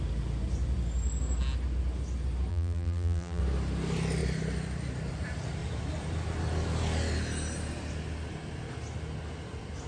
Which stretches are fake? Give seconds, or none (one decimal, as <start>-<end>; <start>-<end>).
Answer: 2.5-3.4